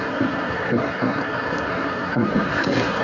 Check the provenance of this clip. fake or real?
fake